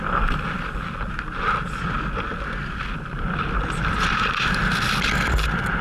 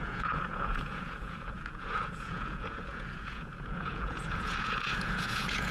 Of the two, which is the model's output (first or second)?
second